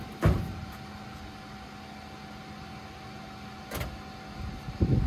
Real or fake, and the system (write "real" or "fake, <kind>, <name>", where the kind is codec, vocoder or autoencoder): real